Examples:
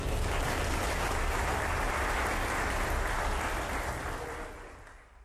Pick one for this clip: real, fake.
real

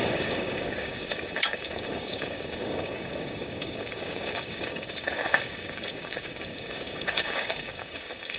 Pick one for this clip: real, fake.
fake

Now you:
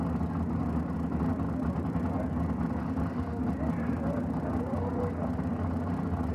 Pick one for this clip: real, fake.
real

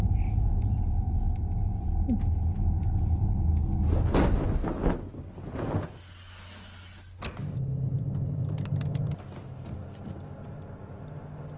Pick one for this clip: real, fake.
real